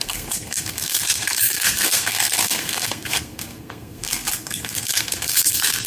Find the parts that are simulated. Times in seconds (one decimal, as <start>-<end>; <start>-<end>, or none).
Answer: 0.0-5.9